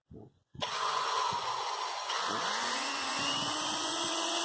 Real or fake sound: fake